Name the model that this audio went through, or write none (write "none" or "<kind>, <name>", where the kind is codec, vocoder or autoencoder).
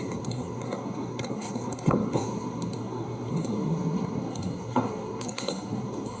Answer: codec, SNAC